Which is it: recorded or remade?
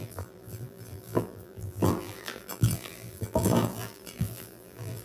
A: remade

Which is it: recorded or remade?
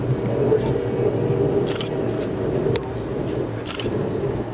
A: recorded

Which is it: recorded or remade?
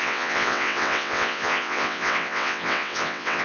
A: remade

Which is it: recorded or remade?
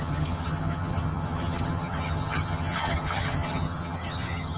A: remade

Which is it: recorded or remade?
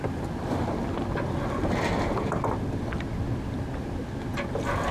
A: recorded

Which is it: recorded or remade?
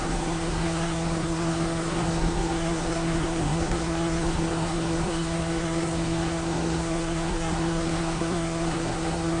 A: remade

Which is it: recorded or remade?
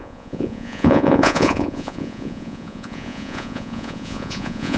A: remade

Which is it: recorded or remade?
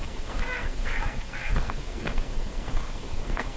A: remade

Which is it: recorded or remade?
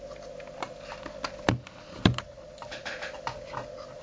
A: recorded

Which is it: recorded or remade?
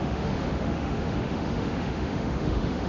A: remade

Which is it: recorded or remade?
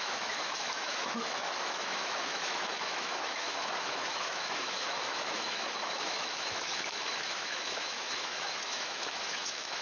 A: remade